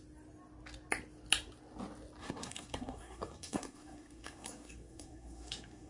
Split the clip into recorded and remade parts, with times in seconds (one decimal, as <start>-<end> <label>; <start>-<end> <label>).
0.0-2.2 recorded; 2.2-5.9 remade